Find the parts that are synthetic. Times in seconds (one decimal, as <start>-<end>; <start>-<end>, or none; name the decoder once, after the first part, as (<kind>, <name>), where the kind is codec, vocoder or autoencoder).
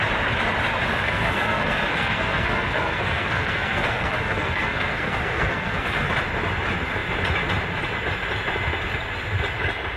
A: 0.9-6.1 (codec, SNAC)